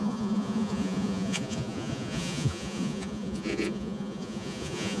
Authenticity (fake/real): fake